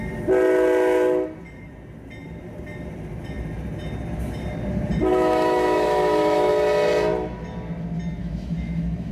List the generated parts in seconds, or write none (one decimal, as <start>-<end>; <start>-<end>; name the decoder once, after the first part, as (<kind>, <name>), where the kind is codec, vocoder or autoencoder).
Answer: 5.1-6.5 (autoencoder, DAC-VAE); 8.2-9.1